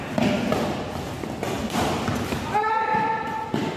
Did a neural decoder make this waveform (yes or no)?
no